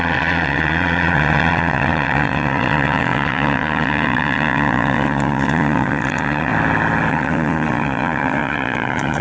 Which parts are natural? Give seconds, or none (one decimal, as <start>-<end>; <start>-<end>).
6.5-7.1